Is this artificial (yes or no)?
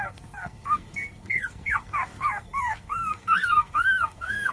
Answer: yes